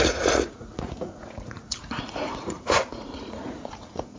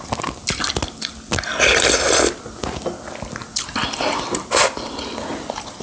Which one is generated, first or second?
first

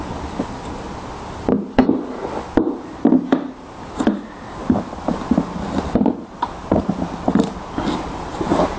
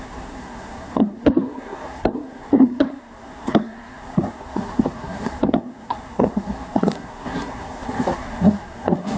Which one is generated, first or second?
second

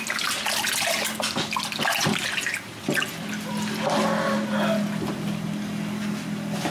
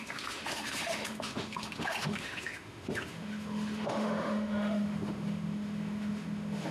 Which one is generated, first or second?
second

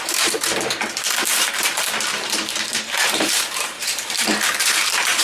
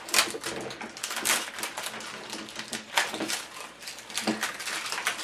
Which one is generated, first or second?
first